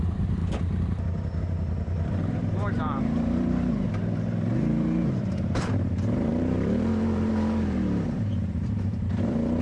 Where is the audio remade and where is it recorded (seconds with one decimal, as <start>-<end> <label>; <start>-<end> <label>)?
0.0-0.4 remade; 0.4-1.4 recorded; 1.4-9.6 remade